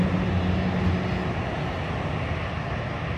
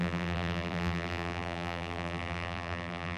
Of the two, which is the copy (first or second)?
second